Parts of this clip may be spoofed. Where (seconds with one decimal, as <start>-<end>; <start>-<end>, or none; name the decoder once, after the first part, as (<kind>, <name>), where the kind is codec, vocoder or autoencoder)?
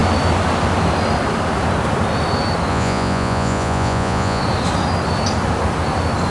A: 2.7-4.4 (vocoder, Vocos)